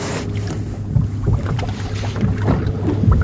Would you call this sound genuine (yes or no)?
yes